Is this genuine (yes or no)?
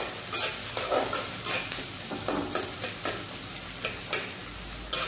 yes